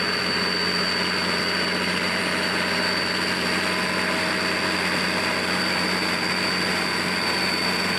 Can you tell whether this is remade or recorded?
recorded